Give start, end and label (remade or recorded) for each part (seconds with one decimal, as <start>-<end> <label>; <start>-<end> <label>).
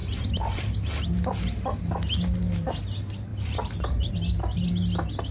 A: 0.0-1.9 remade; 1.9-3.3 recorded; 3.3-4.1 remade; 4.1-5.3 recorded